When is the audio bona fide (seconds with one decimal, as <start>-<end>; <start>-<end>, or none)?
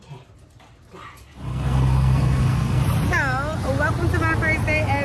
0.0-1.5; 2.8-5.0